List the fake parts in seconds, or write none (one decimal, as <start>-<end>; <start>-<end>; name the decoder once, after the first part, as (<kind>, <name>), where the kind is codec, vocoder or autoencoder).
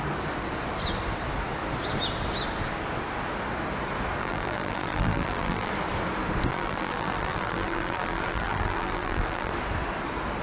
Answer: 4.2-5.7 (vocoder, BigVGAN v2); 6.5-9.5